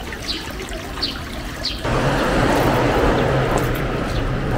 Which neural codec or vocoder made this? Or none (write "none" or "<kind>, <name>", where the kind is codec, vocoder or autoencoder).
none